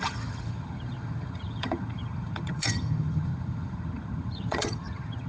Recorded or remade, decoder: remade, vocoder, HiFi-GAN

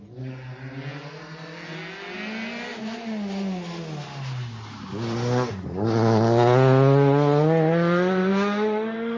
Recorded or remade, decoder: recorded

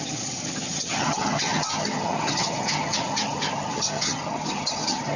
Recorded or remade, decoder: remade, vocoder, HiFi-GAN